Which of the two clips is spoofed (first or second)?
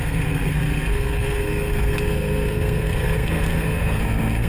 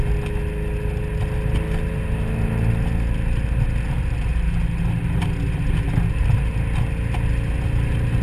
first